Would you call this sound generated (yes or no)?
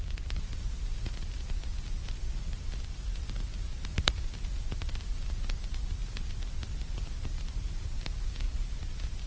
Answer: no